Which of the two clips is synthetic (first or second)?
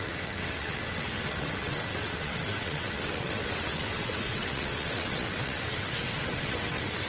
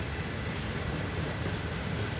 first